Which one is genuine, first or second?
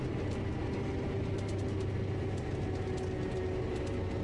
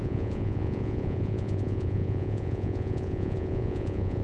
first